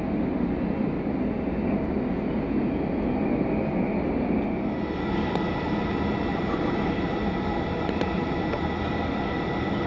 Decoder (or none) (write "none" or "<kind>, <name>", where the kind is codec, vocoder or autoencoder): none